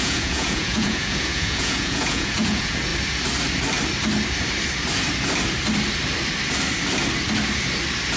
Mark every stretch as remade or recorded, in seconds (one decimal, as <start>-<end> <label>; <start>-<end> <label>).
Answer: 0.0-2.9 remade; 2.9-8.2 recorded

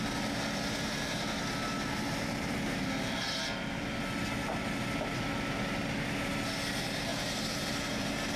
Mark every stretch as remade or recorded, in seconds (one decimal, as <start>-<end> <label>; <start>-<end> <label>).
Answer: 0.0-7.1 recorded; 7.1-7.9 remade; 7.9-8.4 recorded

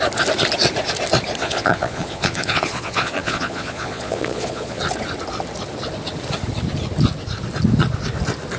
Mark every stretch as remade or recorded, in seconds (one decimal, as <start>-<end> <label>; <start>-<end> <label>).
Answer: 0.0-1.4 recorded; 1.4-4.8 remade; 4.8-8.6 recorded

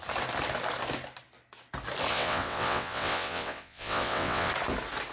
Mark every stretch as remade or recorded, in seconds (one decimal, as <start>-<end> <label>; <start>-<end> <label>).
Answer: 0.0-2.1 recorded; 2.1-4.5 remade; 4.5-5.1 recorded

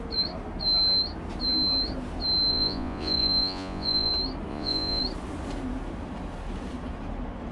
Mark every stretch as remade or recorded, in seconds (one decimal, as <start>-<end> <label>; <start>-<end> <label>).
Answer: 0.0-2.5 recorded; 2.5-4.1 remade; 4.1-4.5 recorded; 4.5-5.0 remade; 5.0-7.5 recorded

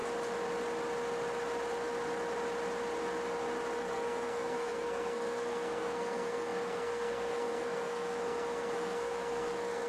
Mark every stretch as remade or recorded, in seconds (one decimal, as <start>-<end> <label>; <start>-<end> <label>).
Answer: 0.0-3.8 recorded; 3.8-9.9 remade

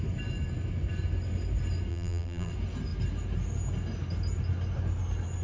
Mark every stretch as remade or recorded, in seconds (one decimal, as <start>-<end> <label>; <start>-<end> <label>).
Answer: 0.0-1.9 recorded; 1.9-2.5 remade; 2.5-5.4 recorded